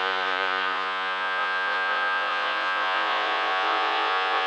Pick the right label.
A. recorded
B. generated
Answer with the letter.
B